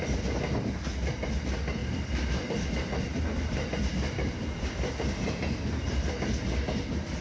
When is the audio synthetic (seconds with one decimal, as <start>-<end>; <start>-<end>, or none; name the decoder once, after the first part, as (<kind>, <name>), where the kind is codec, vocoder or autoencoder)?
1.8-6.1 (vocoder, BigVGAN v2)